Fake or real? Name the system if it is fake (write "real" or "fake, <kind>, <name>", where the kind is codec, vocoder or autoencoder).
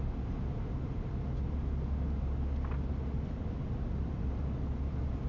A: real